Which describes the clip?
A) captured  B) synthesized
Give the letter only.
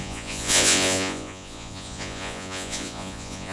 B